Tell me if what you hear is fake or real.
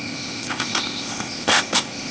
fake